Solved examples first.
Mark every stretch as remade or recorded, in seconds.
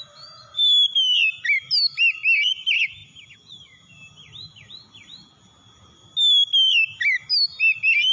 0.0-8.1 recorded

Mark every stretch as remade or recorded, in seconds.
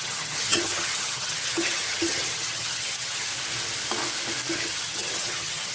0.0-3.3 remade; 3.3-4.5 recorded; 4.5-5.7 remade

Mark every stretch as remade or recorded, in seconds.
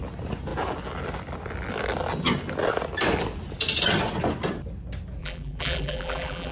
0.0-5.2 recorded; 5.2-6.5 remade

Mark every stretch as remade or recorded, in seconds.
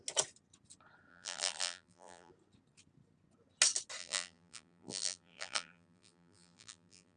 0.0-1.1 recorded; 1.1-2.3 remade; 2.3-4.0 recorded; 4.0-7.2 remade